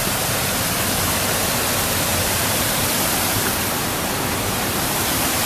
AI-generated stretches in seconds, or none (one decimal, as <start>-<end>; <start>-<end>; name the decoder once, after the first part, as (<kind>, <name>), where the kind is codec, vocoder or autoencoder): 2.1-5.5 (vocoder, BigVGAN v2)